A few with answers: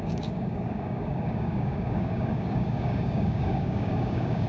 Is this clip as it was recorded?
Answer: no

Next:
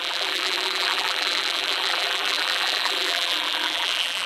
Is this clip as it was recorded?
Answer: no